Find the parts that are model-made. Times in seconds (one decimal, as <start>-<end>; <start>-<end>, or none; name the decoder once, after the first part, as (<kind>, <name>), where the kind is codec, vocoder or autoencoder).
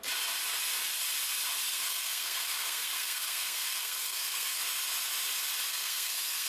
1.7-4.6 (codec, SNAC); 5.7-6.5